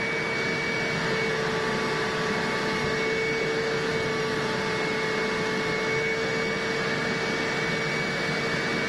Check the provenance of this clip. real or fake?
real